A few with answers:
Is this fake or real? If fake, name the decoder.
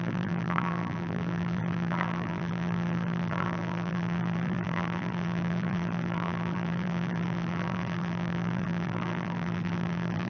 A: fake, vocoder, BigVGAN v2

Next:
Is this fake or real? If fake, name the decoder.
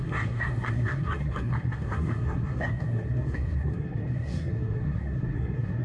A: fake, codec, SNAC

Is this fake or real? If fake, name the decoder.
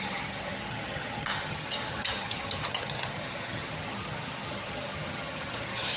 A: fake, vocoder, HiFi-GAN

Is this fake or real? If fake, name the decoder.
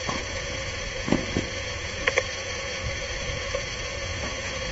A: fake, vocoder, Vocos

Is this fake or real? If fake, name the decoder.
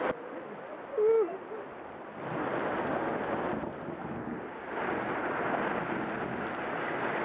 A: real